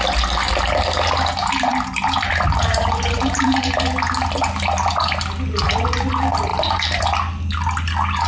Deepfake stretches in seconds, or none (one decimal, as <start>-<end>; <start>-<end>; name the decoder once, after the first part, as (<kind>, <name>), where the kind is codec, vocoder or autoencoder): 1.7-3.7 (vocoder, BigVGAN v2); 6.5-7.0